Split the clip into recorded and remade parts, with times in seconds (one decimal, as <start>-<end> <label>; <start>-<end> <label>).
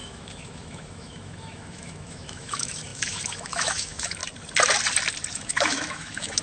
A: 0.0-4.2 remade; 4.2-5.3 recorded; 5.3-6.4 remade